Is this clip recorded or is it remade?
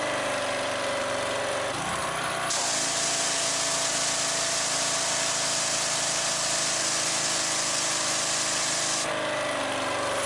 recorded